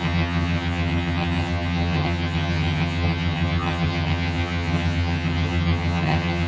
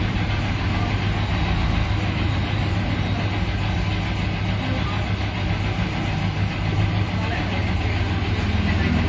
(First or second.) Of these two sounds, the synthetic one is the first